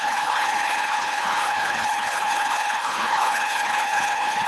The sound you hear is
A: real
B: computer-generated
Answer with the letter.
B